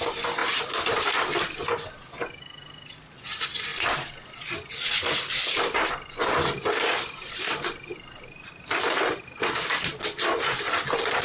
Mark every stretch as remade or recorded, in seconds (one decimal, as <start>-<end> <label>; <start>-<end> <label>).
0.0-11.2 recorded